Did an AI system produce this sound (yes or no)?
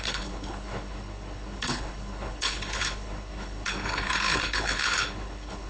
yes